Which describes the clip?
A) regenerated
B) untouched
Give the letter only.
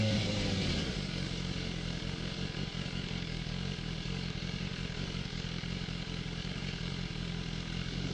A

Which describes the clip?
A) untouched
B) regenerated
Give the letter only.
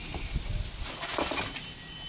A